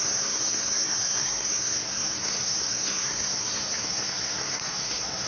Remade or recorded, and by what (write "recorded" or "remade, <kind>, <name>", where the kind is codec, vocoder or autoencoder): remade, codec, SNAC